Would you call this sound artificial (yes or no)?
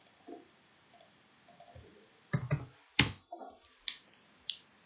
no